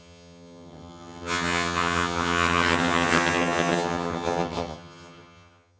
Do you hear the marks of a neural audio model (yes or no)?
yes